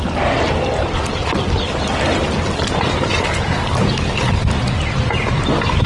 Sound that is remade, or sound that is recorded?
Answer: recorded